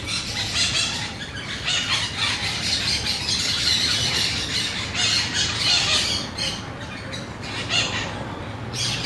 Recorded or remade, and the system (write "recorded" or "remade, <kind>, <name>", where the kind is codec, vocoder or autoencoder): recorded